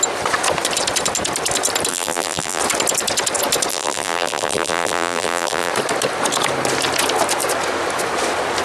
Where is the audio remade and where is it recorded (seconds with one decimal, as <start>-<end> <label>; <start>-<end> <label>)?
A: 0.0-1.9 recorded; 1.9-2.6 remade; 2.6-3.7 recorded; 3.7-5.7 remade; 5.7-8.6 recorded